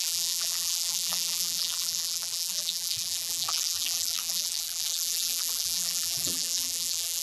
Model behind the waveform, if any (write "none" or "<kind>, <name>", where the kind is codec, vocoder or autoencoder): vocoder, BigVGAN v2